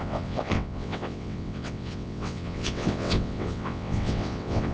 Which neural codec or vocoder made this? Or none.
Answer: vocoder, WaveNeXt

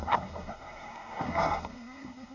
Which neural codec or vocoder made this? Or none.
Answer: codec, SNAC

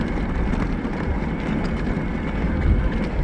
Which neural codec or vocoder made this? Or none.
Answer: none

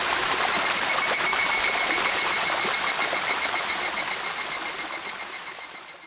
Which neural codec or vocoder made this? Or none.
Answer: none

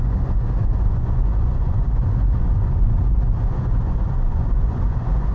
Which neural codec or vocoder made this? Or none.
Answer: vocoder, Vocos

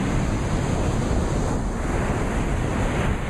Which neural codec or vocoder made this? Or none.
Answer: none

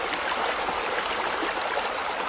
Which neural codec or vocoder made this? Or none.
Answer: none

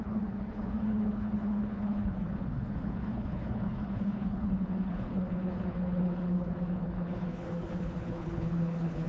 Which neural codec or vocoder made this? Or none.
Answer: codec, HILCodec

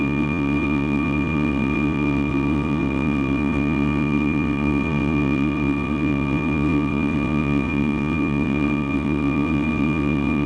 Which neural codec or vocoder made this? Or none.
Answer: vocoder, WaveNeXt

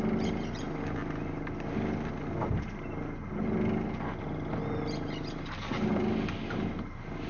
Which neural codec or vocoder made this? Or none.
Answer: none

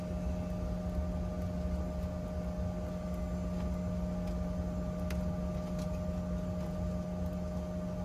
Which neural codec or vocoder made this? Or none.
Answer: none